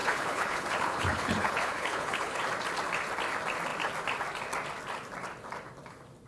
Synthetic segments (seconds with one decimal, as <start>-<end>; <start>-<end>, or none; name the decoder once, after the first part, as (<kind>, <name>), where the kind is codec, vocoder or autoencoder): 0.0-2.4 (codec, HILCodec)